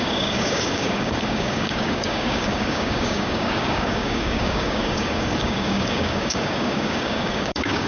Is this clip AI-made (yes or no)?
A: yes